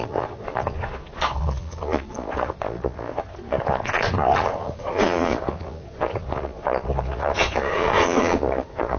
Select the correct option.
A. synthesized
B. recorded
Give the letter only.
A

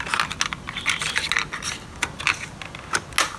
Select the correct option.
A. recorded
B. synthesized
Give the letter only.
A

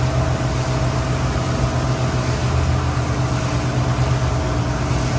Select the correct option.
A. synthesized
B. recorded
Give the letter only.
B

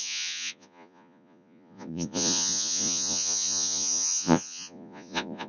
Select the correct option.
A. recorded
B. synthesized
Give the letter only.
B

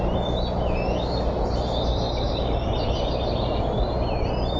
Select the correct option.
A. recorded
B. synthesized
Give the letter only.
A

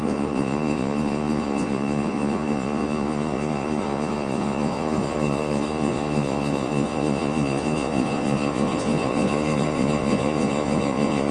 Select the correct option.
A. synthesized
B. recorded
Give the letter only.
A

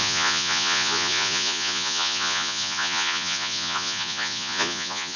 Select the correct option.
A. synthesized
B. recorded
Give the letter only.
A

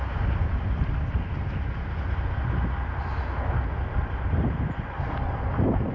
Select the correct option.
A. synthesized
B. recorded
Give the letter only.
B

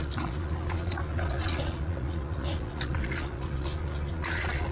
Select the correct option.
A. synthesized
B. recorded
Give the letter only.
A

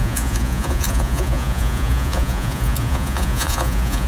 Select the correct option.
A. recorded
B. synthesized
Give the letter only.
B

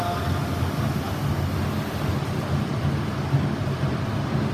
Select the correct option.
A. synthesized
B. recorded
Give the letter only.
B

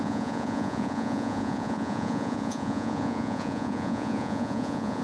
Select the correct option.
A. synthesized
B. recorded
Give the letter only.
A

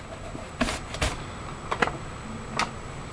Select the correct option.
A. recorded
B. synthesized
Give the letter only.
A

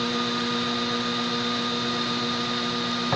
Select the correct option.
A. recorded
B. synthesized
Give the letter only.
A